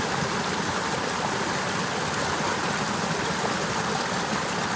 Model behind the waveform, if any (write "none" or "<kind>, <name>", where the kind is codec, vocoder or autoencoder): none